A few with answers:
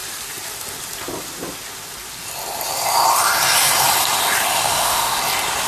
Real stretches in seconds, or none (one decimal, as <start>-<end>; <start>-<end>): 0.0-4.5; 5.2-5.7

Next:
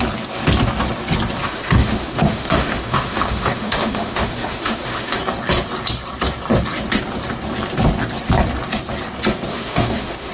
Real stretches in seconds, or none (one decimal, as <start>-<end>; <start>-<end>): 0.0-1.4; 5.2-9.5

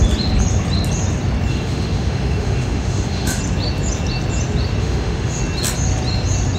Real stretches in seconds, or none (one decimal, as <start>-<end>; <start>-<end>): 0.0-1.5; 3.4-4.8; 5.4-6.6